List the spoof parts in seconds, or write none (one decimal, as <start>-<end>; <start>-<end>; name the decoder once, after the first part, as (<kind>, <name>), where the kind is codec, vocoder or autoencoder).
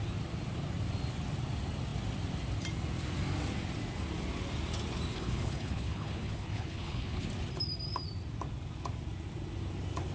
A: 5.1-7.3 (codec, HILCodec)